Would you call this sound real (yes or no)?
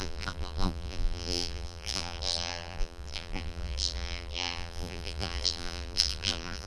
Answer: no